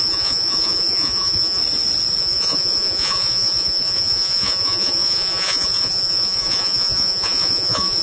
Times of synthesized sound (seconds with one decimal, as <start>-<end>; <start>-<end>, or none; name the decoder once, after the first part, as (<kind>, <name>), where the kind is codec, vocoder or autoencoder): 0.0-1.6 (vocoder, Vocos); 2.2-8.0